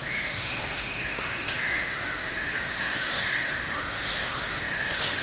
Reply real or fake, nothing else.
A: fake